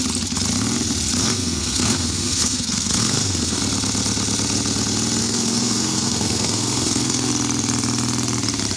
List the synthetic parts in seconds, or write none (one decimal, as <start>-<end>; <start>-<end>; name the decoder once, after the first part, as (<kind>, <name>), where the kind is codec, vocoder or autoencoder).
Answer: 1.2-3.6 (codec, SNAC); 5.2-7.3

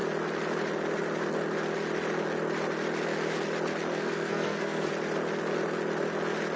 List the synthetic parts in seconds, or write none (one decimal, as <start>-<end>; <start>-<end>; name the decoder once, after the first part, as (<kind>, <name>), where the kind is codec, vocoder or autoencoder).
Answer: 3.9-4.9 (codec, SNAC)

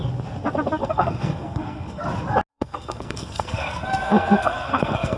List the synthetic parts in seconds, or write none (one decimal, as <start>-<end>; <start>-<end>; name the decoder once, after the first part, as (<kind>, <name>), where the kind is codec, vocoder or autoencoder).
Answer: 0.8-2.0 (codec, SNAC); 2.5-5.2

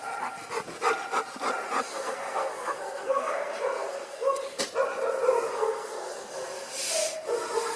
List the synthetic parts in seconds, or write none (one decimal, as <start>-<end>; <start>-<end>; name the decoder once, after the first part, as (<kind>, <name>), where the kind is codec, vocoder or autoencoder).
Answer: 1.9-4.6 (codec, SNAC); 5.5-6.1

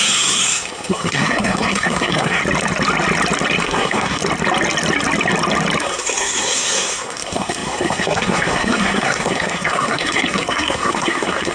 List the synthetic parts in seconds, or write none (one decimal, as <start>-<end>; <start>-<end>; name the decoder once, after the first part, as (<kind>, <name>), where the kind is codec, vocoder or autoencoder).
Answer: 0.0-2.4 (codec, SNAC); 3.6-4.2; 5.8-11.5

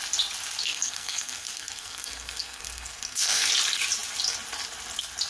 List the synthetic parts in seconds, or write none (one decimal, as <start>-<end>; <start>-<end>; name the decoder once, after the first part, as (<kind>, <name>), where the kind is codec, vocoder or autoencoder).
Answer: 0.6-3.5 (codec, SNAC)

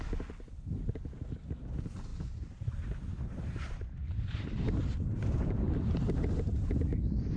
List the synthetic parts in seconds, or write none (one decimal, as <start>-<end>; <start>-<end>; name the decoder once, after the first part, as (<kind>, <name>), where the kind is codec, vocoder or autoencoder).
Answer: none